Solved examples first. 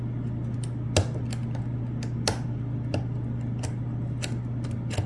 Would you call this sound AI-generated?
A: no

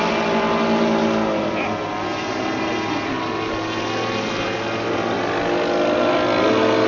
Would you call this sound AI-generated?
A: no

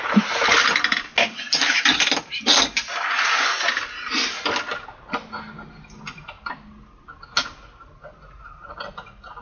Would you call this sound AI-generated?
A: no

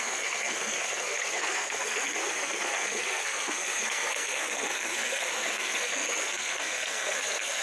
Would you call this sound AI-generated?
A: yes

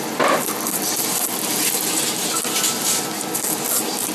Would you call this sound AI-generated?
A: no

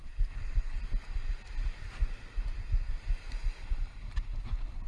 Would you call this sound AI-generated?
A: no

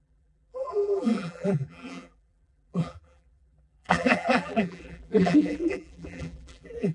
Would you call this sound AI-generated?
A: yes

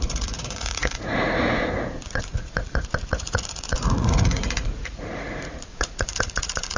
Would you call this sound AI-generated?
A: yes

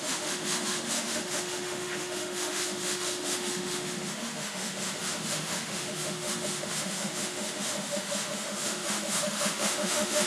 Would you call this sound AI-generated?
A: yes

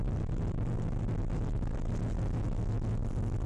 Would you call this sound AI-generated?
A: no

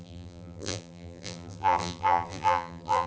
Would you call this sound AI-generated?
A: yes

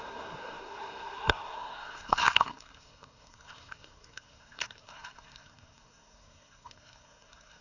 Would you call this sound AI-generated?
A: yes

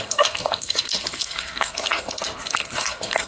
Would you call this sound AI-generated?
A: yes